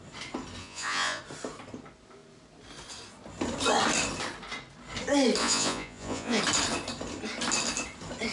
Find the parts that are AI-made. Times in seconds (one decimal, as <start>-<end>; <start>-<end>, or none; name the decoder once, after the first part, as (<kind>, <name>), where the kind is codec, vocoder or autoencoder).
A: 0.6-1.2 (vocoder, Vocos); 5.4-6.4